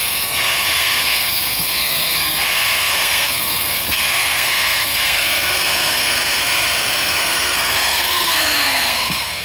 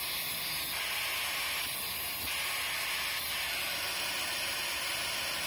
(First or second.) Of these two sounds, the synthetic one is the first